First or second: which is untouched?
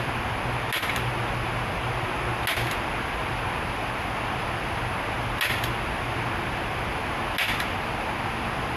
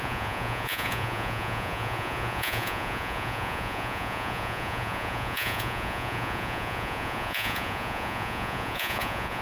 first